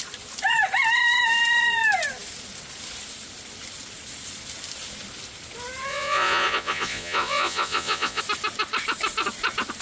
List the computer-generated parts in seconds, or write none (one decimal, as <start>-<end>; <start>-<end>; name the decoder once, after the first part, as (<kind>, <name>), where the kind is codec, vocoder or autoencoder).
5.9-8.2 (vocoder, Vocos)